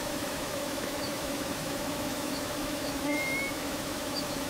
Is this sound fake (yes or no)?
yes